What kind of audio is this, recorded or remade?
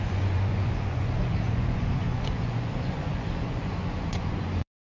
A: remade